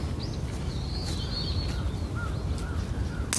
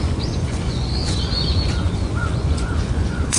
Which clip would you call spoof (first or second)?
second